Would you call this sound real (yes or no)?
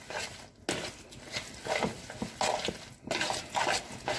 yes